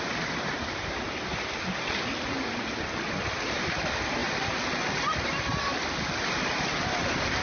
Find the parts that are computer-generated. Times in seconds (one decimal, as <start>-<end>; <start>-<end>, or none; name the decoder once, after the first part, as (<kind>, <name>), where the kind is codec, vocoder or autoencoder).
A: none

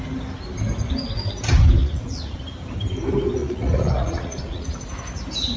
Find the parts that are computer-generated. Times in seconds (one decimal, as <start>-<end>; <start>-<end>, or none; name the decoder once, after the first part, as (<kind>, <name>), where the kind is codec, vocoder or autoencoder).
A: 1.8-2.4 (vocoder, Vocos); 3.4-4.8